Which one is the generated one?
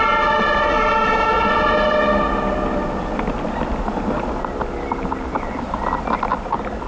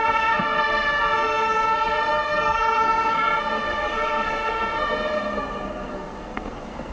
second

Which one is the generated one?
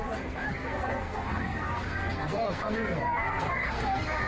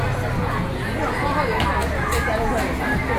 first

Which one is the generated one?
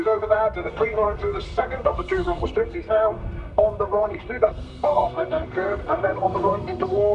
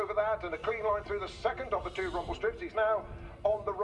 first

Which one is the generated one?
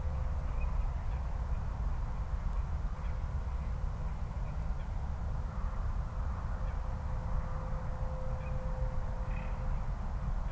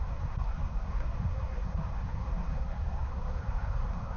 second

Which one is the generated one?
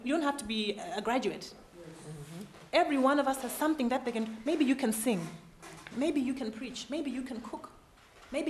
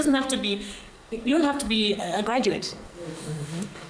second